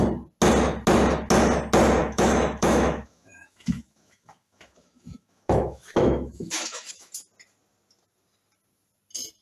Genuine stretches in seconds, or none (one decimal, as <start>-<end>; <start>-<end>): 0.0-2.0; 7.1-9.4